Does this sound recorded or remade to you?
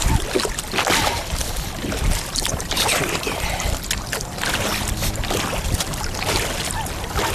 recorded